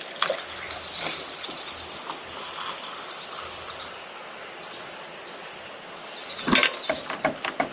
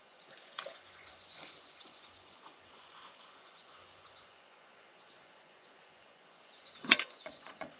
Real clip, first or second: first